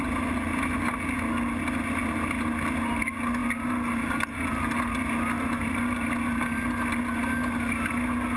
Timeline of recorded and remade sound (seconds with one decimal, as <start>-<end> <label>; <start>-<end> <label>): 0.0-8.4 recorded